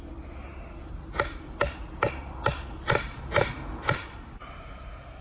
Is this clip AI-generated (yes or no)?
no